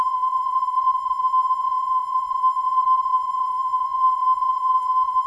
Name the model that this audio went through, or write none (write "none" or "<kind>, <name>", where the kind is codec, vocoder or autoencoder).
vocoder, Vocos